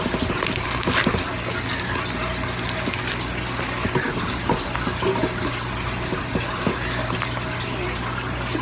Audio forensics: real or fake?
real